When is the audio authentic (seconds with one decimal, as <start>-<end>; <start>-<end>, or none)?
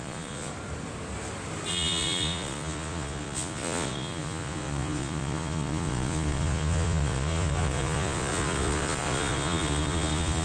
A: 0.5-1.7